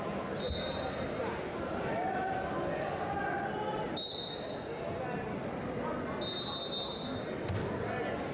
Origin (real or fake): real